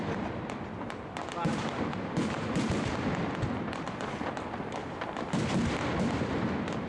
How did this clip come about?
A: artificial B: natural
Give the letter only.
B